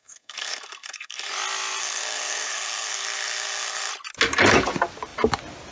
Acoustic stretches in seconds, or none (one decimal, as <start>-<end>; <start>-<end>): 1.3-1.8; 3.9-5.7